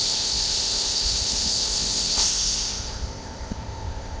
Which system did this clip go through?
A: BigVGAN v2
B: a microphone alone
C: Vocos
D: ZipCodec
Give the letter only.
D